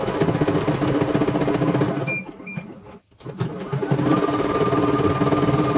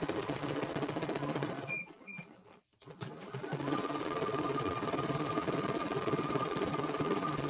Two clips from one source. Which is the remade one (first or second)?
second